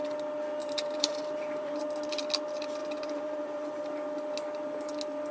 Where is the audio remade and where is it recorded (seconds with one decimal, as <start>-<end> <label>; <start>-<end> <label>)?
0.0-0.6 recorded; 0.6-1.8 remade; 1.8-2.8 recorded; 2.8-3.8 remade; 3.8-5.3 recorded